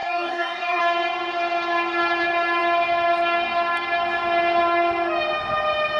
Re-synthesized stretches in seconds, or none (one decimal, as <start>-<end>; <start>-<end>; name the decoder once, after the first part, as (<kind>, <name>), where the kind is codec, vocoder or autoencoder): 0.0-0.8 (codec, DAC)